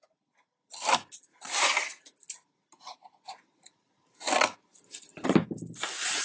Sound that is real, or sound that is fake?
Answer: real